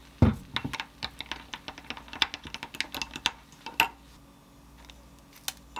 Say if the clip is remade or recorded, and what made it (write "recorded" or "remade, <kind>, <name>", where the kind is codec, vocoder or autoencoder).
recorded